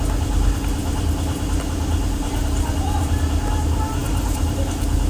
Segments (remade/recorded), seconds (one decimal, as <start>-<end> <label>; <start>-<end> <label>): 0.0-4.0 recorded; 4.0-4.6 remade; 4.6-5.1 recorded